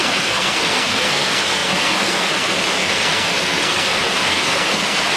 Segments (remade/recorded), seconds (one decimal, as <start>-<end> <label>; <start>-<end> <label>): 0.0-5.2 remade